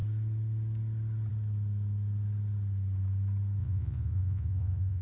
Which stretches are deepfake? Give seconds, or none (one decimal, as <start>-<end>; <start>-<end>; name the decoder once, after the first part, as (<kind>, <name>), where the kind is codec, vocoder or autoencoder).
3.6-5.0 (vocoder, Vocos)